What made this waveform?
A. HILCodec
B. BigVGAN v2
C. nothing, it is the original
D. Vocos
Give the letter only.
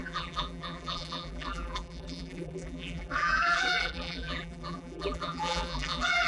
B